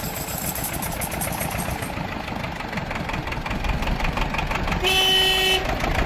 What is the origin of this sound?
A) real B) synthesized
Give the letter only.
A